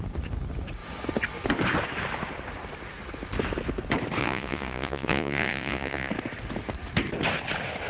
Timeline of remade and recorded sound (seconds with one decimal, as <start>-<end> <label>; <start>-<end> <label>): 0.0-4.2 recorded; 4.2-6.1 remade; 6.1-7.9 recorded